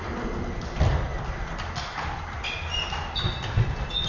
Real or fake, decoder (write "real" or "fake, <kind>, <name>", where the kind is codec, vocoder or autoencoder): real